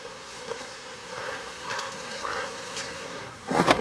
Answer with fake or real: fake